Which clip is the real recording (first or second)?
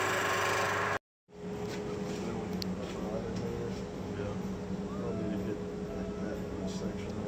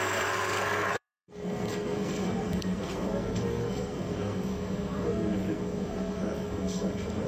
first